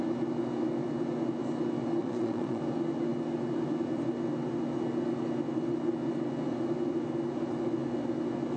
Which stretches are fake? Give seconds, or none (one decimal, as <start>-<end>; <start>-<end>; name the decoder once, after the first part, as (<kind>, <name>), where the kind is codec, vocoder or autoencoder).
2.0-2.6 (vocoder, Vocos)